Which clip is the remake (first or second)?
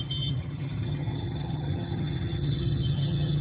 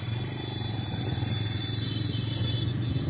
first